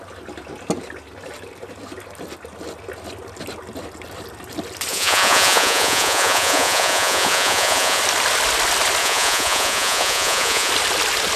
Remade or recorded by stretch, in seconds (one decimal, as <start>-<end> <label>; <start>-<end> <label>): 0.0-4.9 recorded; 4.9-8.0 remade; 8.0-9.0 recorded; 9.0-10.7 remade; 10.7-11.4 recorded